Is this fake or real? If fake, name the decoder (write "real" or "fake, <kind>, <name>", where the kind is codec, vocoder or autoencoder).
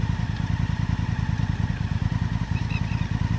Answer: real